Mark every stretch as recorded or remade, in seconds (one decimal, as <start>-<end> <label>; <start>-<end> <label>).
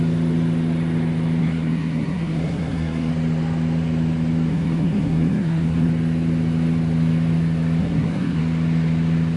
0.0-1.4 recorded; 1.4-3.1 remade; 3.1-4.5 recorded; 4.5-5.9 remade; 5.9-7.8 recorded; 7.8-8.4 remade; 8.4-9.4 recorded